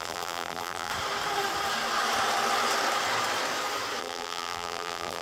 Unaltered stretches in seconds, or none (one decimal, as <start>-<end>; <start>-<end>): 0.9-4.0